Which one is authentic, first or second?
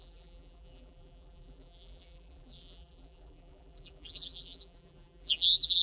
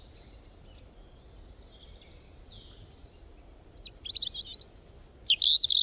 second